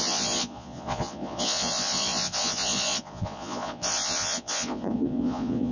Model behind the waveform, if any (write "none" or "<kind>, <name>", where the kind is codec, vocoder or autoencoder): vocoder, Vocos